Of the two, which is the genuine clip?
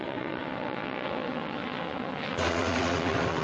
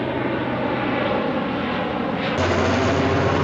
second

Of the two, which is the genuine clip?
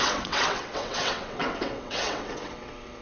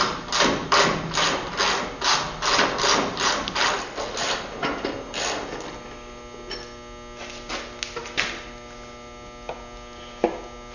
second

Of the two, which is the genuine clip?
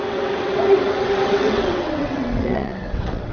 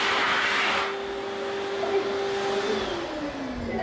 second